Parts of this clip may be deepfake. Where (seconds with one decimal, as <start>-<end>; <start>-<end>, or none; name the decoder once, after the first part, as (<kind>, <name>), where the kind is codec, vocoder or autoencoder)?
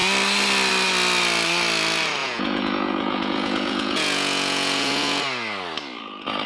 2.2-5.2 (vocoder, Vocos)